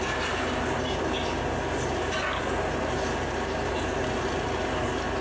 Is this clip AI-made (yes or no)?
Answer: no